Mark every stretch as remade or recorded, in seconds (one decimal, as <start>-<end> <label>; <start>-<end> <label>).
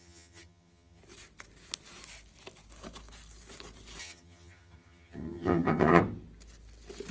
0.0-1.0 remade; 1.0-4.0 recorded; 4.0-6.0 remade; 6.0-7.1 recorded